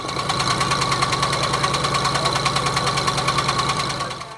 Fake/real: fake